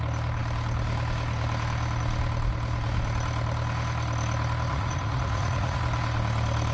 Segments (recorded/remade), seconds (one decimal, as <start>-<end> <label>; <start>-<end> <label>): 0.0-4.7 recorded; 4.7-5.8 remade; 5.8-6.7 recorded